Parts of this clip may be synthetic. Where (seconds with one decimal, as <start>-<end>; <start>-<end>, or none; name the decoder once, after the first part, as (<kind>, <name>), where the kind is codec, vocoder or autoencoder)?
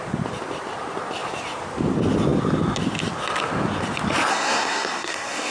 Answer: 4.3-5.5 (codec, SNAC)